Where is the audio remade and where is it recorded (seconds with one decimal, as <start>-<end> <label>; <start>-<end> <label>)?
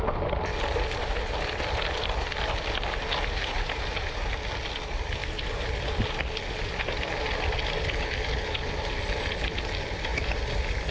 0.0-10.9 recorded